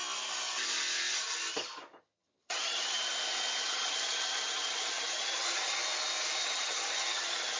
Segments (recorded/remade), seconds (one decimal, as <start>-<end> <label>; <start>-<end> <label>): 0.0-2.0 recorded; 2.0-3.1 remade; 3.1-3.6 recorded; 3.6-5.8 remade; 5.8-6.4 recorded; 6.4-7.6 remade